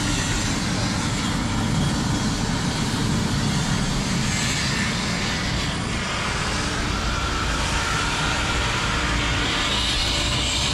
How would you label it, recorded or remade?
remade